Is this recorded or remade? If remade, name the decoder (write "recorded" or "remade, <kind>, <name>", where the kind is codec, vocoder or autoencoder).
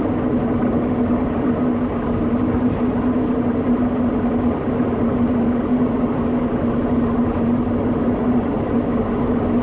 recorded